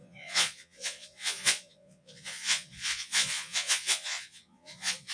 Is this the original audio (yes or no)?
no